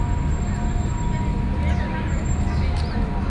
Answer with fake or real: real